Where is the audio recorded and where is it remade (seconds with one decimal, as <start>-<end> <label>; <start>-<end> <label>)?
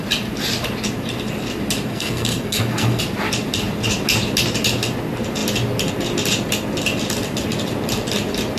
0.0-1.9 recorded; 1.9-3.0 remade; 3.0-8.6 recorded